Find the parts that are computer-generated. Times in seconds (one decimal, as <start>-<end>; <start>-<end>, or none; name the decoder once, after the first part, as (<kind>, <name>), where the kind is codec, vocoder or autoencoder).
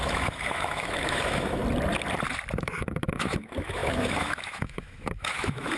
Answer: 0.0-1.6 (autoencoder, DAC-VAE); 2.6-5.8